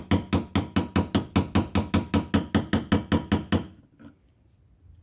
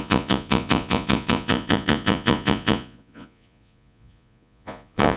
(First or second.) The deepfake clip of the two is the second